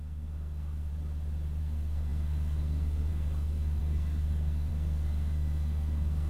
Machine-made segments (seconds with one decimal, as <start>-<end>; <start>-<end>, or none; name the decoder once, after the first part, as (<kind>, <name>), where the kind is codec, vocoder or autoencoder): 0.0-0.9 (codec, SNAC); 1.6-6.3